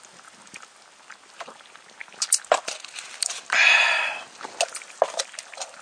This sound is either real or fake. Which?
real